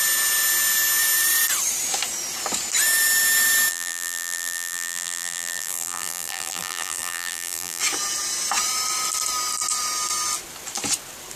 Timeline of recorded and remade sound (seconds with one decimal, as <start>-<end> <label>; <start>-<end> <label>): 0.0-3.7 recorded; 3.7-7.8 remade; 7.8-11.4 recorded